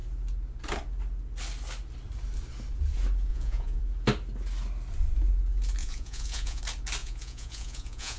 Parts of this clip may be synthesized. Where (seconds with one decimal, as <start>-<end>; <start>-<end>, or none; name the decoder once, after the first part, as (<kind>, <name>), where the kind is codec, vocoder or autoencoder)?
3.3-3.8 (vocoder, Vocos); 5.8-6.6; 7.0-8.2

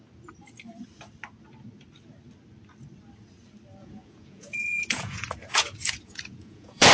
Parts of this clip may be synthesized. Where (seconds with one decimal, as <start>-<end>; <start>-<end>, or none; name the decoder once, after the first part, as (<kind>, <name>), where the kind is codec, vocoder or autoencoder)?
3.8-6.9 (vocoder, Vocos)